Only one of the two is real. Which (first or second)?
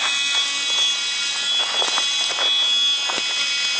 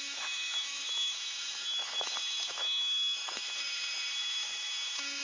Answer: first